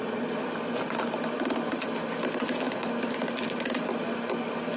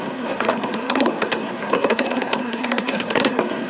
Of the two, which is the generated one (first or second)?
second